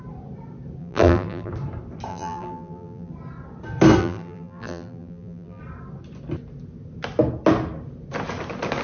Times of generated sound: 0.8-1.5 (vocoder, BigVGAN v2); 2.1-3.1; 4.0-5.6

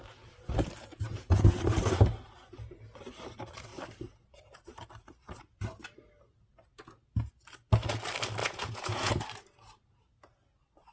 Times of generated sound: 0.9-1.6 (vocoder, Vocos); 8.4-9.1

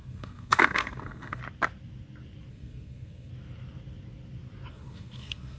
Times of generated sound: 0.0-1.4 (codec, SNAC); 2.5-3.3; 4.7-5.6

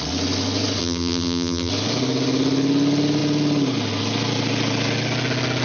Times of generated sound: 0.8-1.7 (vocoder, BigVGAN v2)

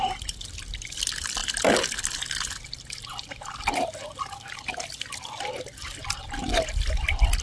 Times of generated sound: none

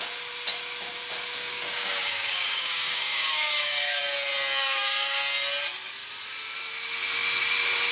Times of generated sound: 1.4-4.0 (codec, DAC); 4.6-5.2

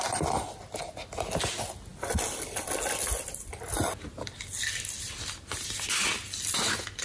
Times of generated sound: none